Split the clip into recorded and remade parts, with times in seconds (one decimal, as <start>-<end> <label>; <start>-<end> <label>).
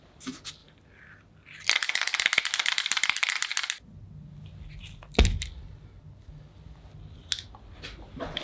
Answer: 0.0-8.4 recorded